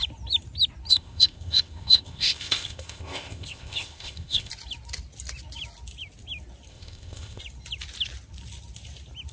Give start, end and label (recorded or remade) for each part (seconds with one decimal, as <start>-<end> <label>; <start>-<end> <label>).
0.0-0.9 recorded; 0.9-4.5 remade; 4.5-6.7 recorded; 6.7-7.4 remade; 7.4-9.3 recorded